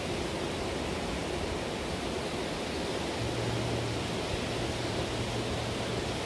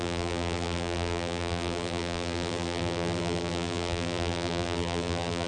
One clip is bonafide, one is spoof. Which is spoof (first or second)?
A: second